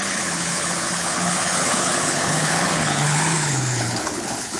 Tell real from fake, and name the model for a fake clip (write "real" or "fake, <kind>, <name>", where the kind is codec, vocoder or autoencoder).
fake, codec, HILCodec